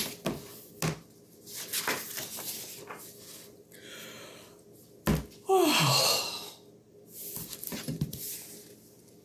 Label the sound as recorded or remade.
recorded